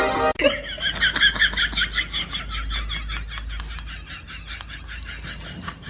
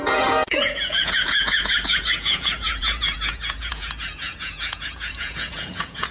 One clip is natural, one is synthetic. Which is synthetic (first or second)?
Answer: second